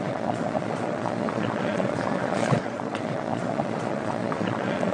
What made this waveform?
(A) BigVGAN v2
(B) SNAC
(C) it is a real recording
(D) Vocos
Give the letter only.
D